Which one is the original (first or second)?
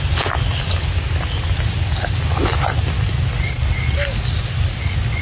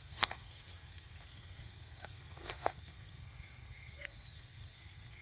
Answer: first